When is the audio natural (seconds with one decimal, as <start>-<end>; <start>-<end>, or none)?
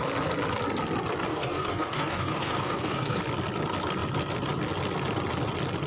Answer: 0.0-1.3; 3.2-5.9